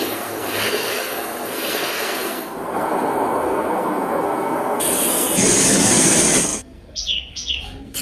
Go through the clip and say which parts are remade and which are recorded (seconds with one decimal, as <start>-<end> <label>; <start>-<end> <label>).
0.0-8.0 remade